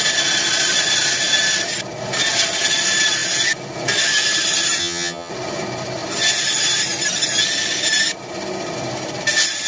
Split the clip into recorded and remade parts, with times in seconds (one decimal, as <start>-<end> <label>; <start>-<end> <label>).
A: 0.0-4.8 recorded; 4.8-5.3 remade; 5.3-9.7 recorded